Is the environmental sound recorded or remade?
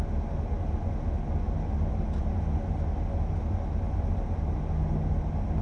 recorded